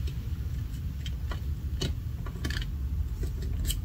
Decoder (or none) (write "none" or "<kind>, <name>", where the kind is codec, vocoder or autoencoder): none